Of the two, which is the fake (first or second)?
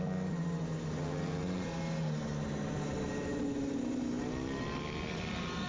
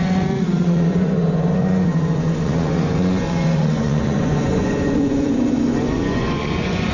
second